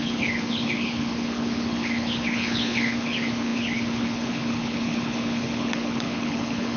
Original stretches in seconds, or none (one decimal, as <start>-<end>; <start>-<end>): none